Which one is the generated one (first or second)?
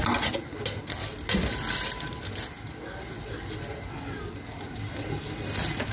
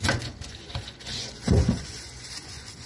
second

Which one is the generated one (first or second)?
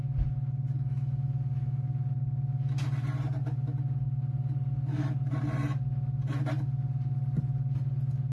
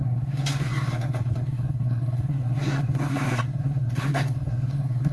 second